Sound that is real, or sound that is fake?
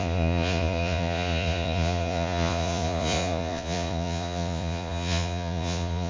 fake